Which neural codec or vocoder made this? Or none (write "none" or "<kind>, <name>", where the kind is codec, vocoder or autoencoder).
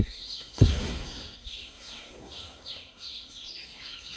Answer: codec, SNAC